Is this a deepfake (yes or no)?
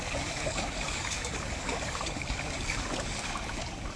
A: yes